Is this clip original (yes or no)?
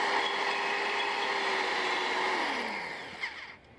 yes